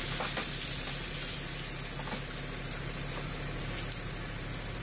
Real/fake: real